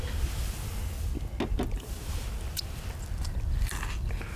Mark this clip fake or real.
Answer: real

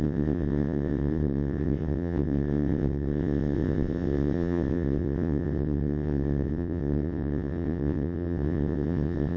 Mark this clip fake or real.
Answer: fake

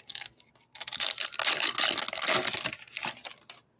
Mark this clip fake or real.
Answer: real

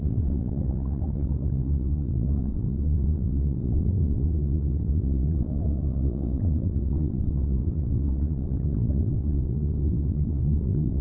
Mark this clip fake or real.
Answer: fake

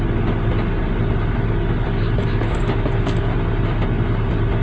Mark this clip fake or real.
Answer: real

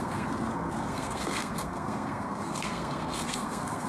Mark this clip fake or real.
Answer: fake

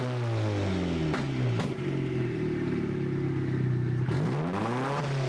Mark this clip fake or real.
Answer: real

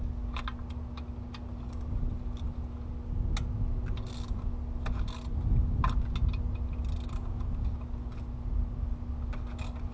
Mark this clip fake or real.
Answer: real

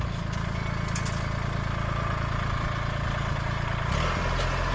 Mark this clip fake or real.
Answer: real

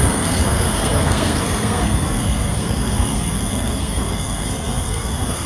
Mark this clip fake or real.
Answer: fake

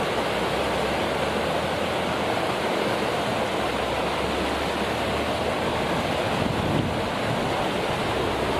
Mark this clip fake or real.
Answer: real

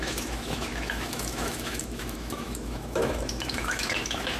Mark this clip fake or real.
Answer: fake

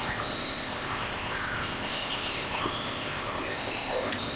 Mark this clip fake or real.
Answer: fake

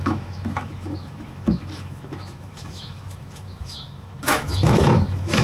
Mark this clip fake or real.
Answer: fake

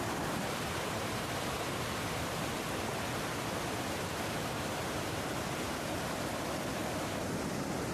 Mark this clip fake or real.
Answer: real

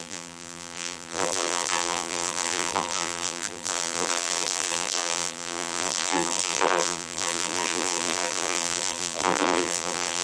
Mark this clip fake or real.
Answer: fake